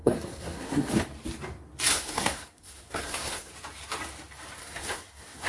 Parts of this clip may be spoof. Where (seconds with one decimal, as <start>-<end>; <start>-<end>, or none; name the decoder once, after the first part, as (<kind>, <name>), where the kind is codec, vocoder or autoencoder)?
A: 0.0-0.9 (codec, SNAC); 1.9-3.5; 4.6-5.5